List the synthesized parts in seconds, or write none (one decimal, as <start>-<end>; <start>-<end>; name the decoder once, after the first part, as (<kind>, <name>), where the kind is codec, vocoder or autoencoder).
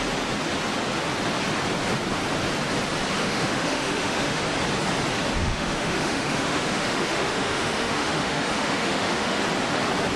3.2-4.4 (autoencoder, DAC-VAE); 5.4-9.4